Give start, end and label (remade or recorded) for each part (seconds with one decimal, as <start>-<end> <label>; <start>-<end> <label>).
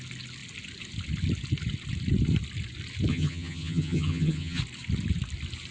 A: 0.0-3.1 recorded; 3.1-4.6 remade; 4.6-5.7 recorded